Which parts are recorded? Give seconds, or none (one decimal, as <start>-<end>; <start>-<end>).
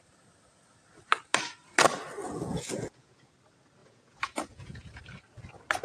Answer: 0.0-2.2; 3.3-3.8; 5.0-5.8